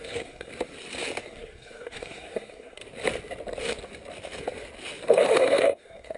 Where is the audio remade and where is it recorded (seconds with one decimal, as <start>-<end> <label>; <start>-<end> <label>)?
0.0-0.5 remade; 0.5-1.2 recorded; 1.2-2.8 remade; 2.8-5.1 recorded; 5.1-6.2 remade